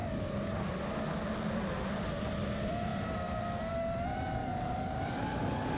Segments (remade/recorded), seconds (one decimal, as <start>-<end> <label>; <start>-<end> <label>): 0.0-4.4 recorded; 4.4-5.8 remade